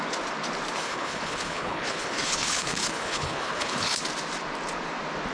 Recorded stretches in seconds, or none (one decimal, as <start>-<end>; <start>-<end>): 0.0-0.8; 4.0-5.3